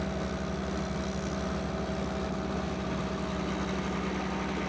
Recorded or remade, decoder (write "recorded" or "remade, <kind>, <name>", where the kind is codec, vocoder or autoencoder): recorded